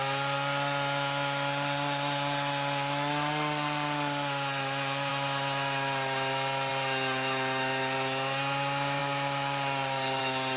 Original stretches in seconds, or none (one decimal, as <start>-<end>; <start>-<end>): 0.0-10.6